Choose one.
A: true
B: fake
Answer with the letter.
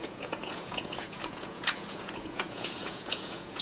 B